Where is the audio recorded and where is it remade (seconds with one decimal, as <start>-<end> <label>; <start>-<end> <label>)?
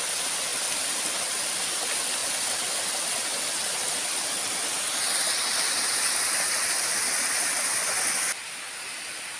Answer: 0.0-9.4 recorded